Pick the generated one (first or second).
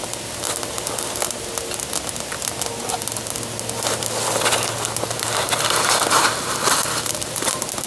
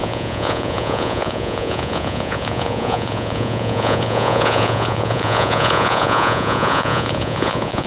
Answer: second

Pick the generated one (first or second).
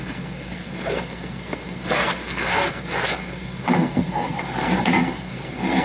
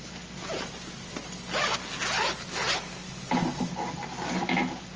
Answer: first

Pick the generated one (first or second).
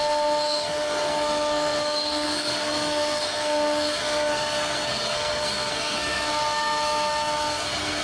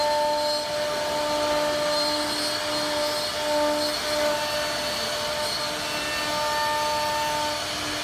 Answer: first